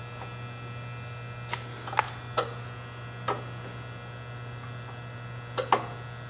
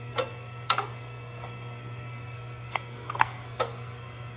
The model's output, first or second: second